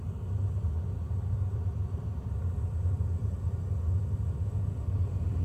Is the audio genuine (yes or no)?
yes